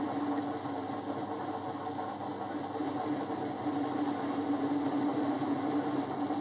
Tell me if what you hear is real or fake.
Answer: real